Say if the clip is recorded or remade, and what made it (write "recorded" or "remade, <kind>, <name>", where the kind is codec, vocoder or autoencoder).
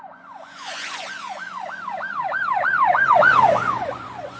remade, vocoder, Vocos